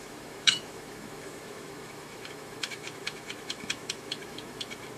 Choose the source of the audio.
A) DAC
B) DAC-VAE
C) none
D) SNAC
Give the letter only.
B